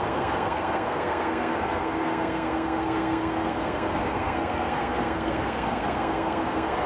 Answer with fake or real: fake